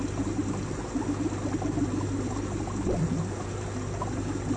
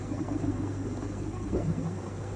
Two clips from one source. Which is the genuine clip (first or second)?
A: first